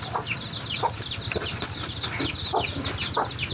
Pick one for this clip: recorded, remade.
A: recorded